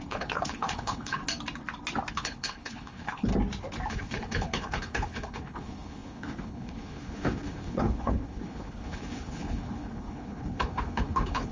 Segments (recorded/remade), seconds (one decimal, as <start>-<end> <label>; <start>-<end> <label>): 0.0-1.2 remade; 1.2-2.1 recorded; 2.1-3.3 remade; 3.3-3.9 recorded; 3.9-11.5 remade